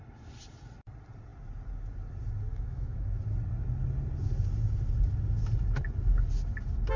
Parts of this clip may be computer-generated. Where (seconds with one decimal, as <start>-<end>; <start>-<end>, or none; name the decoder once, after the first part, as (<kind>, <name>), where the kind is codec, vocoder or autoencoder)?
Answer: 2.5-3.2 (autoencoder, DAC-VAE)